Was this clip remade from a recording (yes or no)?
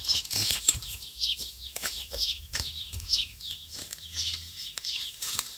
yes